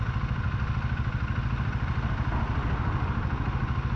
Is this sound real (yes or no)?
yes